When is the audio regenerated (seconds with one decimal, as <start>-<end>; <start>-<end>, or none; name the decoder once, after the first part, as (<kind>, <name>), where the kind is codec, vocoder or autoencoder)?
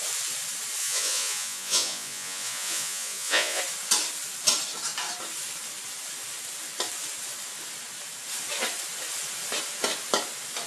0.8-3.6 (vocoder, Vocos)